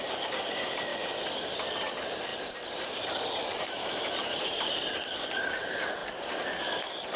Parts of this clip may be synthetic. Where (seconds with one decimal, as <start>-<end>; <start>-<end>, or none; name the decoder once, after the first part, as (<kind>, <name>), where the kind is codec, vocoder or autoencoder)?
2.3-4.7 (vocoder, BigVGAN v2)